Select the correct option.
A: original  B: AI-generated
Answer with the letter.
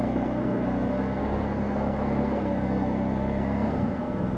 B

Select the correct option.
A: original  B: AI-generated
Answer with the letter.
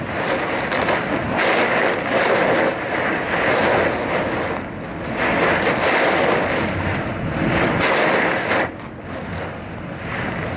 A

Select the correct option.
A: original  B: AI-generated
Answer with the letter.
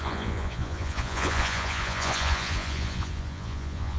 B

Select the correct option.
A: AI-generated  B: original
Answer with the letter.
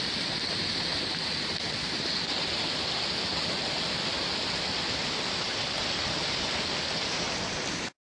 B